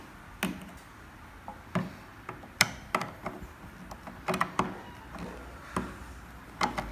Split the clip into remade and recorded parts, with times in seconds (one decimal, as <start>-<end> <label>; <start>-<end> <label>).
0.0-6.9 recorded